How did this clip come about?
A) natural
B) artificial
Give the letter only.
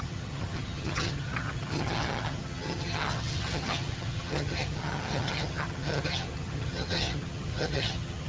B